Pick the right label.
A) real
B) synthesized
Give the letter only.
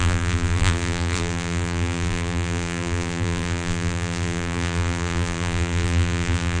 B